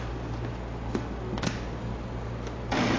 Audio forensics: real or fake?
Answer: real